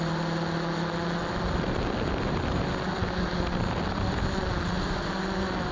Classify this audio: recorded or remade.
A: recorded